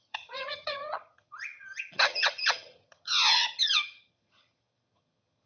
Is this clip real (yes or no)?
no